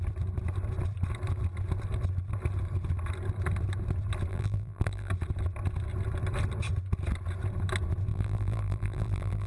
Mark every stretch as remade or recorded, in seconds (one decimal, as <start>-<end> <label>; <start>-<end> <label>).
0.0-4.3 recorded; 4.3-5.1 remade; 5.1-8.1 recorded; 8.1-9.5 remade